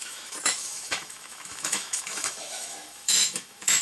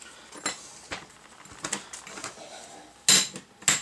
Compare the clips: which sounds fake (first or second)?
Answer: first